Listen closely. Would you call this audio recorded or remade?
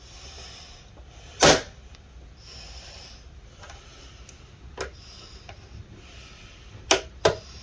recorded